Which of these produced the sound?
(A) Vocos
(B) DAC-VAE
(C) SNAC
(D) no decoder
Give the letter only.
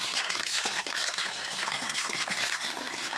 C